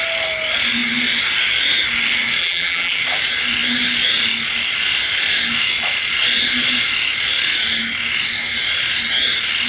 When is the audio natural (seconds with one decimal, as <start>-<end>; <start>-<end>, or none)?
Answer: 0.0-2.4; 3.0-9.7